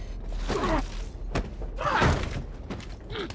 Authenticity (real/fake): real